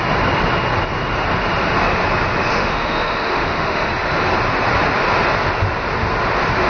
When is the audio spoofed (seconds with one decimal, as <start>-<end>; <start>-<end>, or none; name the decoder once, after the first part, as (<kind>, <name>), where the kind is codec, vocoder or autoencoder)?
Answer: 2.5-3.9 (autoencoder, DAC-VAE)